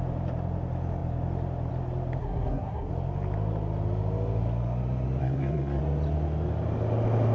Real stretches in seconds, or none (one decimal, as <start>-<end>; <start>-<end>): 0.0-2.2; 2.9-5.2; 5.8-7.3